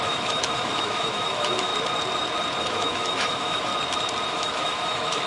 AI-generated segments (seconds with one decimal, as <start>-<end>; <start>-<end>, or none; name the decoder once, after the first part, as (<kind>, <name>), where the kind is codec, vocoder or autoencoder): 0.0-1.7 (autoencoder, DAC-VAE); 2.6-3.7; 4.3-5.3